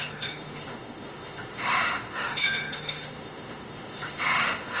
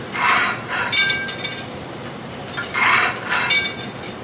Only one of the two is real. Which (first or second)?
second